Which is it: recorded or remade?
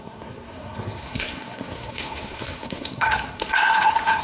remade